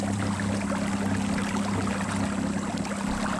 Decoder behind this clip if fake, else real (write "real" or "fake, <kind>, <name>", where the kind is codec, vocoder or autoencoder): real